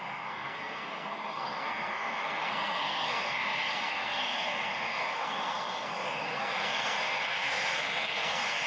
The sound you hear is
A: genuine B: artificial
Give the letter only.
B